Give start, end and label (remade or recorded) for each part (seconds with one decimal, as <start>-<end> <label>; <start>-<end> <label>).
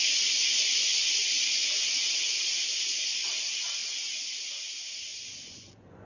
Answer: 0.0-0.5 recorded; 0.5-1.9 remade; 1.9-5.1 recorded; 5.1-6.1 remade